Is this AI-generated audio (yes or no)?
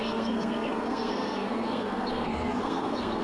yes